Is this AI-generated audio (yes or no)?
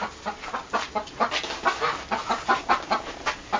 no